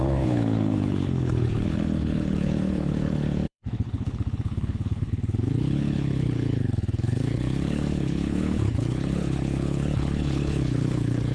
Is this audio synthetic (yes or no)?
yes